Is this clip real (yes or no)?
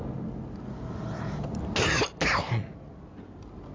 yes